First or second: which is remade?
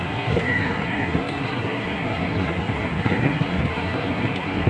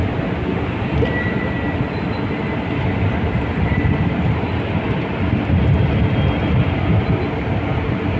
first